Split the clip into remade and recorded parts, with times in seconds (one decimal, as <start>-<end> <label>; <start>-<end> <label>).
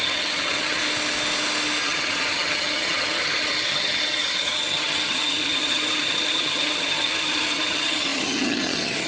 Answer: 0.0-0.8 remade; 0.8-1.8 recorded; 1.8-9.1 remade